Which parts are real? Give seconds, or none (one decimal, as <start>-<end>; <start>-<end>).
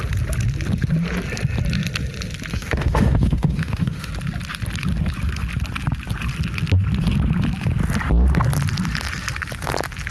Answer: 0.0-2.5; 4.1-10.1